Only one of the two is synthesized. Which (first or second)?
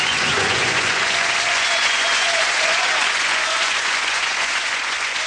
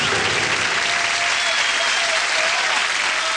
first